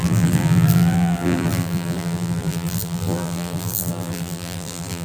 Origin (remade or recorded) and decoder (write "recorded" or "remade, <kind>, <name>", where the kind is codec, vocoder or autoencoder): remade, vocoder, BigVGAN v2